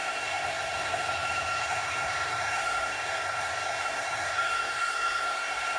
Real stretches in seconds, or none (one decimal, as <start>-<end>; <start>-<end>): none